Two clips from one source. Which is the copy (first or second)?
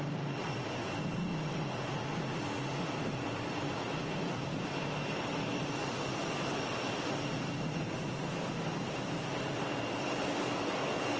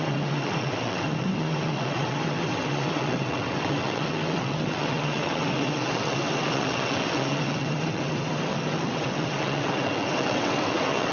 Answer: second